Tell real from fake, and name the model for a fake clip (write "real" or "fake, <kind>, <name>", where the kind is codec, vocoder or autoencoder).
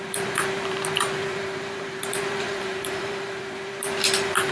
fake, vocoder, BigVGAN v2